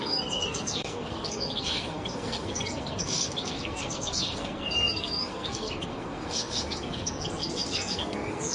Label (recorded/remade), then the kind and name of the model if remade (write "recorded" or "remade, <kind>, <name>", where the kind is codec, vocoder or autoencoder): remade, codec, SNAC